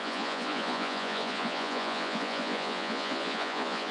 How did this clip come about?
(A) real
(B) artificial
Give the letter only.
B